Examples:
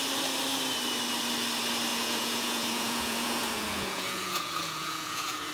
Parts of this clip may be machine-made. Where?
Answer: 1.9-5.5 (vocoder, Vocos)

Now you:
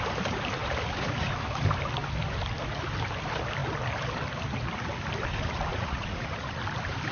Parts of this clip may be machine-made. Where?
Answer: 5.7-6.6 (vocoder, Vocos)